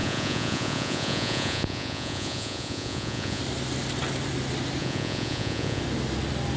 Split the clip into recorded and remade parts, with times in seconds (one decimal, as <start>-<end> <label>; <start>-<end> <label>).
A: 0.0-3.4 remade; 3.4-4.8 recorded; 4.8-5.8 remade; 5.8-6.6 recorded